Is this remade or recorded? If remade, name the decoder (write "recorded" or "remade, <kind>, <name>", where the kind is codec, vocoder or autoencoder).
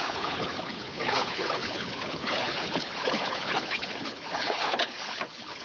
remade, codec, HILCodec